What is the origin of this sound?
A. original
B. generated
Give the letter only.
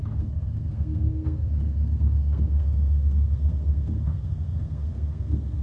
B